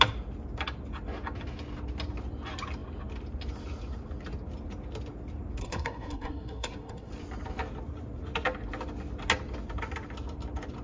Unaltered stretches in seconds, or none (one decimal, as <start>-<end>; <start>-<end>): 0.0-5.6; 7.1-10.8

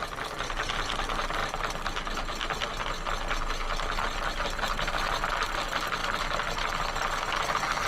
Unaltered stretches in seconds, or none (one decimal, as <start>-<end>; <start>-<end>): 0.0-7.9

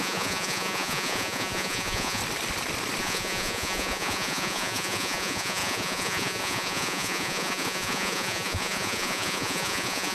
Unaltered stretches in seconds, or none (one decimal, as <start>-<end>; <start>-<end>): 2.2-3.0

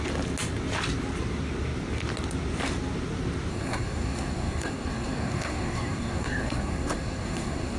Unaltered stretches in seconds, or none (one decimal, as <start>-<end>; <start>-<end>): 0.0-3.5

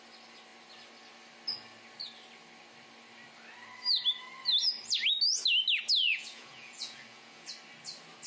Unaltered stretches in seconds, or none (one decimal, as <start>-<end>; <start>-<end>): 0.0-6.0; 7.5-8.3

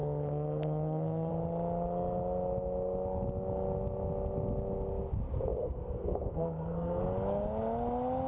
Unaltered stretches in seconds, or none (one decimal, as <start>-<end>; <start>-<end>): 1.3-5.6; 7.0-8.3

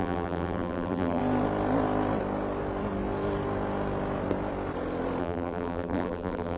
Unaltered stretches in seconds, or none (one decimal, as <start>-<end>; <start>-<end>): 1.2-5.2